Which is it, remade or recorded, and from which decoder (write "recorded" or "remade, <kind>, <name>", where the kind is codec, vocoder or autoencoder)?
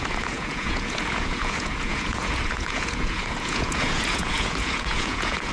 remade, vocoder, Vocos